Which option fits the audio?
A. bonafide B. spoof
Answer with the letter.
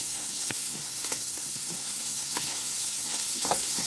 B